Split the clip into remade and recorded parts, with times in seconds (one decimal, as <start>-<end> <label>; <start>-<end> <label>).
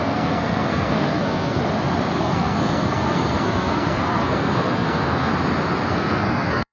0.0-1.6 remade; 1.6-2.2 recorded; 2.2-5.3 remade; 5.3-5.9 recorded; 5.9-6.7 remade